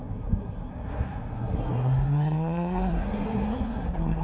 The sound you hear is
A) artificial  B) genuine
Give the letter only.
A